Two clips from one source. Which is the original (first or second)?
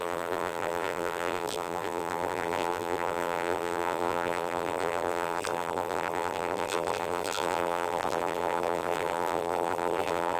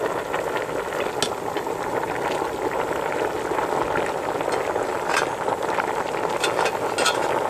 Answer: second